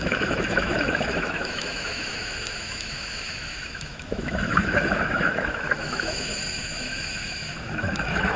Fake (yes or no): yes